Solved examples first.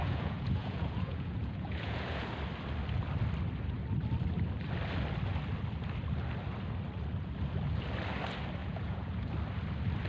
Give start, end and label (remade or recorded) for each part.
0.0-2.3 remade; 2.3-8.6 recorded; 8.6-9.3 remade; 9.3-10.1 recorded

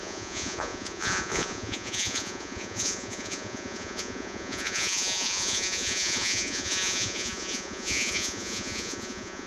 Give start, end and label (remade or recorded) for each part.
0.0-9.5 remade

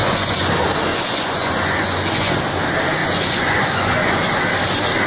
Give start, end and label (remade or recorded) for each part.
0.0-0.5 remade; 0.5-0.9 recorded; 0.9-2.4 remade; 2.4-3.0 recorded; 3.0-4.3 remade; 4.3-5.1 recorded

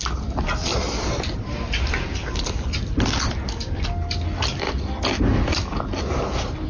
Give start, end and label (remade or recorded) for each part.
0.0-6.7 recorded